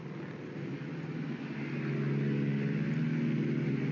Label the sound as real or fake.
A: real